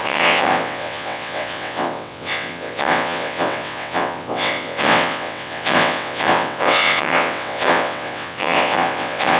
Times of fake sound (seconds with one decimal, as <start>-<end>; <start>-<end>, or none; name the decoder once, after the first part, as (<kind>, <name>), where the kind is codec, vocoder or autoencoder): 0.0-9.4 (vocoder, WaveNeXt)